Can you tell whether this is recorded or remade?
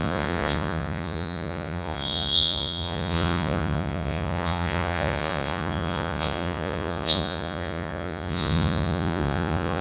remade